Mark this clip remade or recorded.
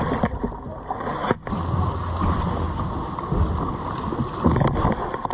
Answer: recorded